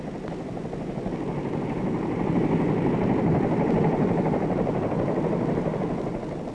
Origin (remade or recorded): recorded